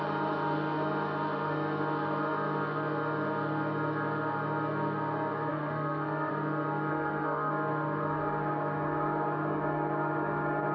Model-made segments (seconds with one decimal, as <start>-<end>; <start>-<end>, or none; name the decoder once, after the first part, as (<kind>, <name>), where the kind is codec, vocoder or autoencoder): 5.5-6.3 (codec, SNAC); 6.9-7.5